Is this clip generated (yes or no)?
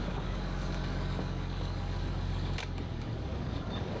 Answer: yes